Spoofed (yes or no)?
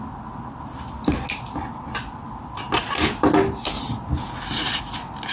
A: no